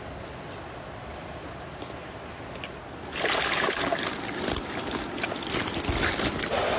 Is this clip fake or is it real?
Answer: real